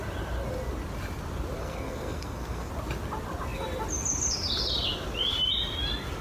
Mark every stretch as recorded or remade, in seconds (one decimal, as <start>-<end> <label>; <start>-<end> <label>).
0.0-1.6 recorded; 1.6-2.7 remade; 2.7-6.2 recorded